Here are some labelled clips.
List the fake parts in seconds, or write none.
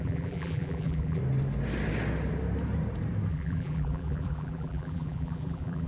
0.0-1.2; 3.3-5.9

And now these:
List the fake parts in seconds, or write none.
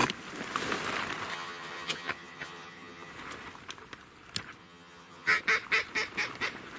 1.3-3.1; 4.6-5.4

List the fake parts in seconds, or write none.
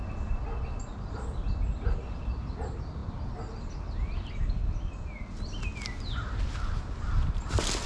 none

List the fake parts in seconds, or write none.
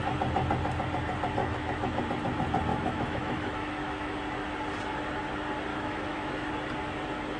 1.4-2.0; 2.7-4.2; 5.7-6.5